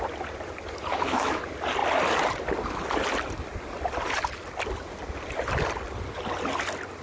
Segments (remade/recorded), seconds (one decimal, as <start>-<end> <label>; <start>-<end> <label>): 0.0-0.9 recorded; 0.9-1.4 remade; 1.4-7.0 recorded